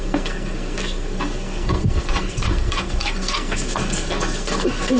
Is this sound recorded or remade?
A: remade